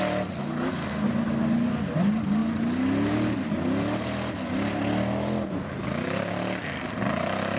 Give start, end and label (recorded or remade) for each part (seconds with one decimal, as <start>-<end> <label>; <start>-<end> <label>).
0.0-7.6 recorded